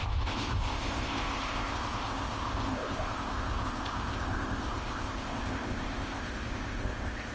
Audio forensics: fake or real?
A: fake